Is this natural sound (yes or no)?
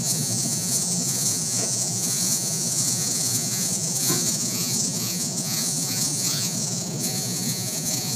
no